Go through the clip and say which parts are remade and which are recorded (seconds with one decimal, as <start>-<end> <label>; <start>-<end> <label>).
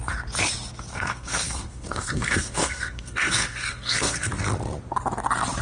0.0-0.9 recorded; 0.9-4.3 remade; 4.3-5.6 recorded